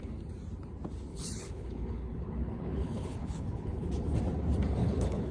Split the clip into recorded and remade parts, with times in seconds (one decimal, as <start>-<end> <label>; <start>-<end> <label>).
0.0-1.1 recorded; 1.1-3.9 remade; 3.9-4.8 recorded; 4.8-5.3 remade